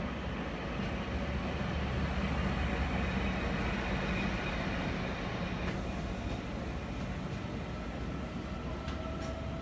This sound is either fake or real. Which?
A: real